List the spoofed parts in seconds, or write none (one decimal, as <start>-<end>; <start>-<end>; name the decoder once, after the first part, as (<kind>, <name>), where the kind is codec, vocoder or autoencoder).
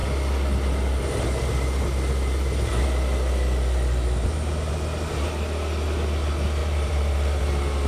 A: 6.6-7.5 (vocoder, BigVGAN v2)